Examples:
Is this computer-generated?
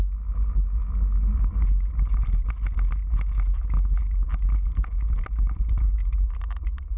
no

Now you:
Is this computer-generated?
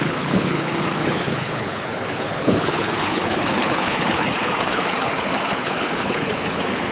yes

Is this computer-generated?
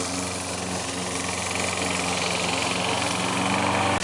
no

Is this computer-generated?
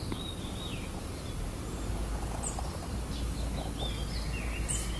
no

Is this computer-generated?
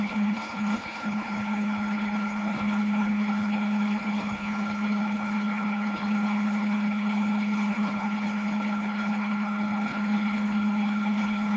yes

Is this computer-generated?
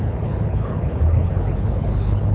yes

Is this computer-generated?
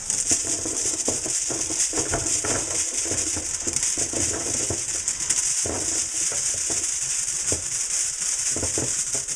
no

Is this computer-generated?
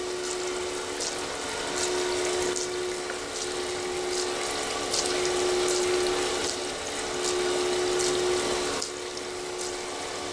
no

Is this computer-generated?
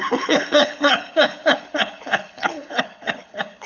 yes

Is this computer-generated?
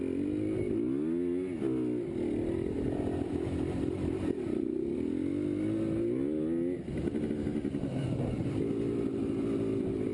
no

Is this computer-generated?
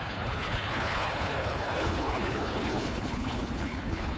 yes